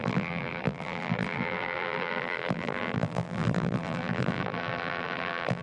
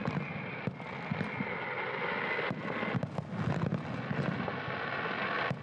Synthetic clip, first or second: first